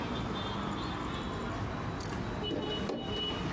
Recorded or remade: recorded